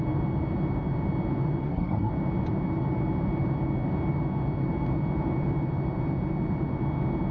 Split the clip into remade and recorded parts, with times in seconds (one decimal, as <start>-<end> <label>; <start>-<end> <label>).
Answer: 0.0-1.6 recorded; 1.6-2.1 remade; 2.1-7.3 recorded